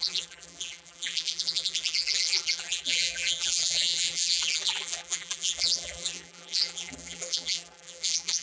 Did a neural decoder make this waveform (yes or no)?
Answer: yes